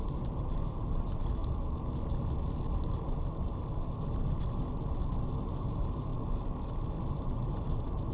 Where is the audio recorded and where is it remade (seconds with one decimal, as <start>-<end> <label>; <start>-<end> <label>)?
0.0-1.4 remade; 1.4-5.4 recorded; 5.4-6.1 remade; 6.1-6.8 recorded; 6.8-8.1 remade